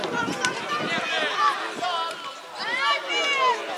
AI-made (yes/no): no